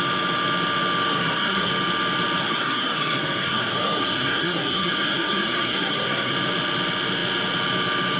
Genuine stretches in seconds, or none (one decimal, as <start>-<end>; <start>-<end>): 0.0-1.1; 1.7-2.4; 6.3-8.2

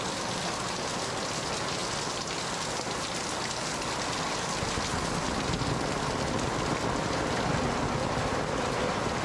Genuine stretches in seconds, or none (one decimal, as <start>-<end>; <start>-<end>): 0.0-9.2

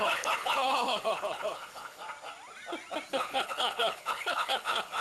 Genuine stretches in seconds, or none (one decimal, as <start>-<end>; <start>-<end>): 2.0-3.1